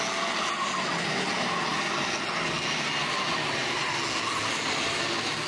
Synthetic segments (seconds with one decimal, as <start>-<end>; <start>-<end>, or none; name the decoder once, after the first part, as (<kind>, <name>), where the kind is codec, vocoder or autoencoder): none